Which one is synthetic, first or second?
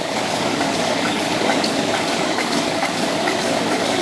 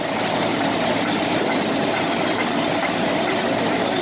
first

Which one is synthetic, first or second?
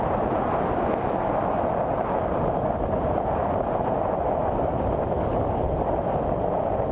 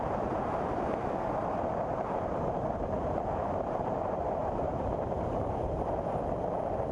second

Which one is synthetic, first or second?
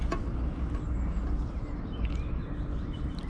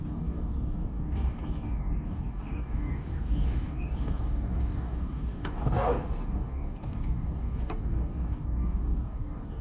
second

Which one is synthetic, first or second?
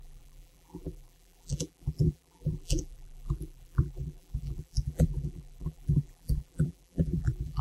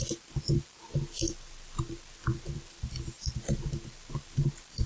first